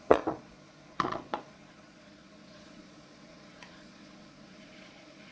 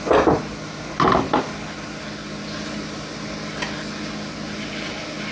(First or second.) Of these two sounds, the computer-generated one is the first